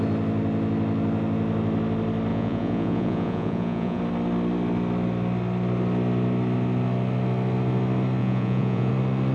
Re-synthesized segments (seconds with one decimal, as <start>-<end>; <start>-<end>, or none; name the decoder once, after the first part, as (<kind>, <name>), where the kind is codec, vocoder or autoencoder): 2.3-4.0 (vocoder, Vocos); 8.2-8.9